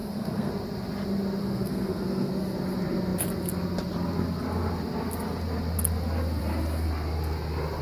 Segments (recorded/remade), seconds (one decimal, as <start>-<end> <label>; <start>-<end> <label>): 0.0-0.5 remade; 0.5-1.4 recorded; 1.4-2.3 remade; 2.3-7.8 recorded